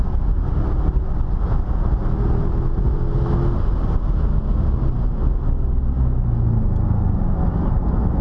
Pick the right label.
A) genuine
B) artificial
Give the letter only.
A